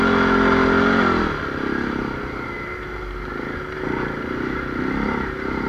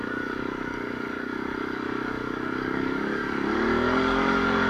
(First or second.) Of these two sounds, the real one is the first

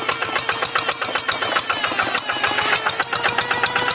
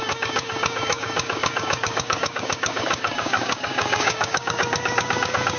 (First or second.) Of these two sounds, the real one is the first